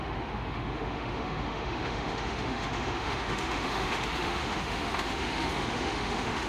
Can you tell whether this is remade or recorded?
remade